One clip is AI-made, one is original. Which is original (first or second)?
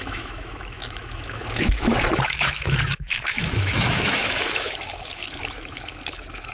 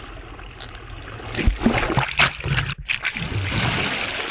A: second